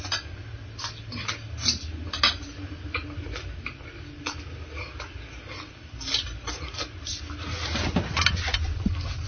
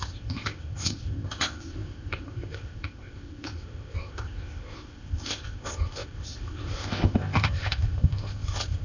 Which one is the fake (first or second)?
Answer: second